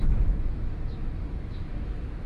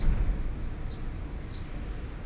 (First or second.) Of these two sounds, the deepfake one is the first